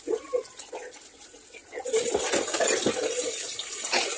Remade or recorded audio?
recorded